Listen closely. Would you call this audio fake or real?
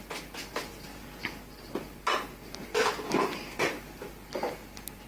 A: real